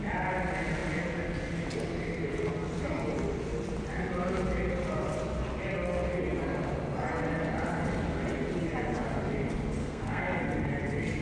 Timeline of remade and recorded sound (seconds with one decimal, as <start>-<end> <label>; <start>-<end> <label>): 0.0-9.8 recorded; 9.8-10.4 remade; 10.4-11.2 recorded